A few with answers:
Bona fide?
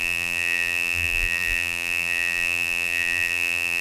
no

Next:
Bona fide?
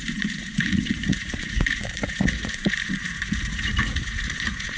no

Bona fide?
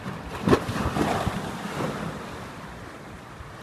no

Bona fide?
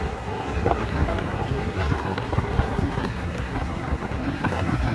no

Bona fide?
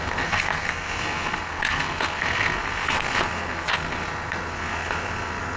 no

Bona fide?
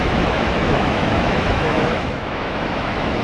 no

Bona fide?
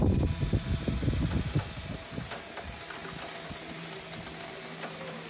yes